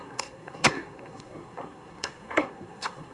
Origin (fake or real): fake